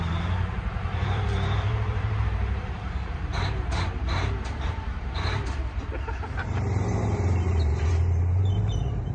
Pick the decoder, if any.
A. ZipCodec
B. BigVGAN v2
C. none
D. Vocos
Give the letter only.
B